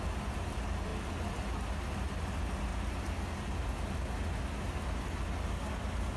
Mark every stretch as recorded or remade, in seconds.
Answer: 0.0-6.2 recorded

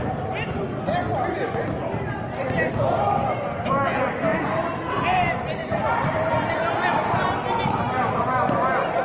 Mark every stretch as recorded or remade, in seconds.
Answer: 0.0-4.3 recorded; 4.3-4.9 remade; 4.9-5.6 recorded; 5.6-6.3 remade; 6.3-9.0 recorded